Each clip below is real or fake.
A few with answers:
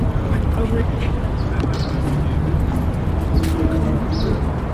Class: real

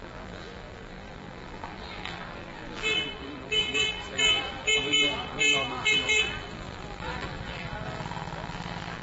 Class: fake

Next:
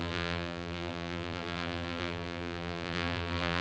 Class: fake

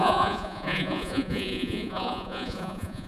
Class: fake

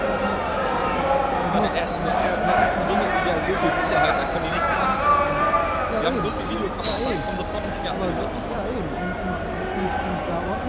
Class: real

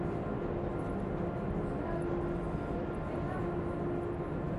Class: real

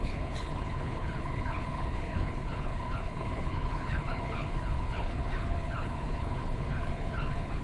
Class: fake